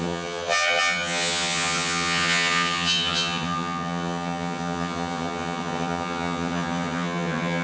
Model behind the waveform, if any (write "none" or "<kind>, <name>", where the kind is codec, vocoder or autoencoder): vocoder, HiFi-GAN